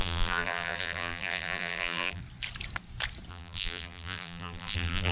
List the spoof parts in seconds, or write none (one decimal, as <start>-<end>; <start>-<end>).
0.0-2.2; 3.3-5.1